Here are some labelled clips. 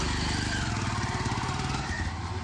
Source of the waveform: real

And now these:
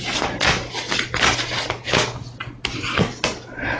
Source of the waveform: real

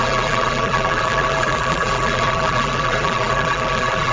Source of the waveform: fake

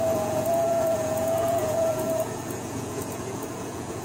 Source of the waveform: fake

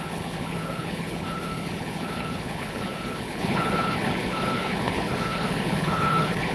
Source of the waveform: fake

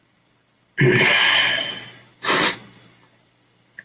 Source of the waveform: real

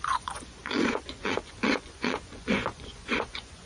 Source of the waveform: fake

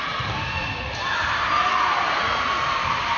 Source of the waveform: fake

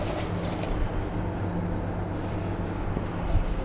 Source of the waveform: real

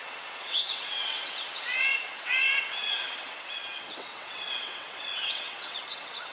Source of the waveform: fake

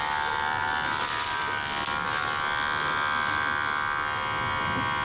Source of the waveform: real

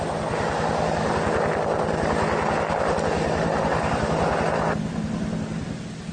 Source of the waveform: real